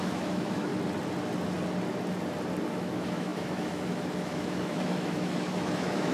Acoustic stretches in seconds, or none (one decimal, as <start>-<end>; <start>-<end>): 0.7-2.7